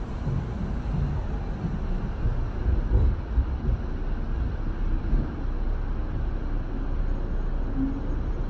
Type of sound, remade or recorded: recorded